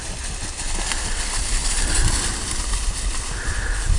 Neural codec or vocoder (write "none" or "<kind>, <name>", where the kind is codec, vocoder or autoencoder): none